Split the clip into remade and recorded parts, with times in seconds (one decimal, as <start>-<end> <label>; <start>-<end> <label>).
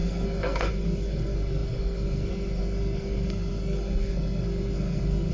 0.0-5.3 remade